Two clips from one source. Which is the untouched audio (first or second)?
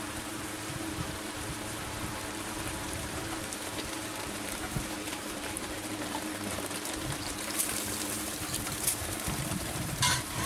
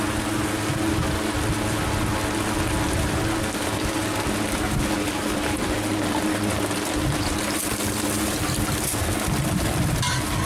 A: second